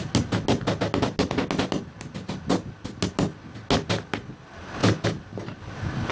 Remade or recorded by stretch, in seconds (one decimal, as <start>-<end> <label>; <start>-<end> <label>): 0.0-6.1 recorded